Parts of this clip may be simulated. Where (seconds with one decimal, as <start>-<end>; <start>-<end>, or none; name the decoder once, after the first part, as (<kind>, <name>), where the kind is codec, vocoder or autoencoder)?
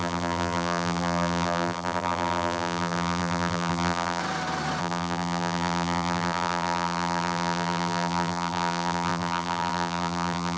0.0-4.2 (vocoder, BigVGAN v2); 4.8-10.6